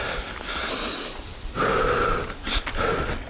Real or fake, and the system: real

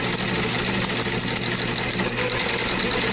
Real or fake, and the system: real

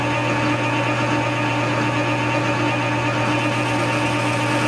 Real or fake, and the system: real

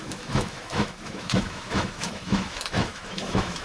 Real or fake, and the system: fake, autoencoder, DAC-VAE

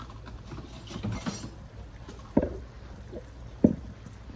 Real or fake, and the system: real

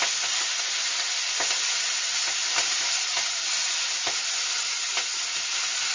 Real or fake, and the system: real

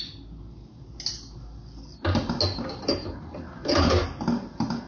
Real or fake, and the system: real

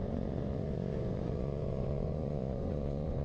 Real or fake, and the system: fake, vocoder, Vocos